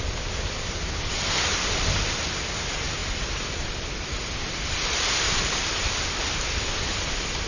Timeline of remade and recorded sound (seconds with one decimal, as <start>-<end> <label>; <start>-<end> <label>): 0.0-7.5 recorded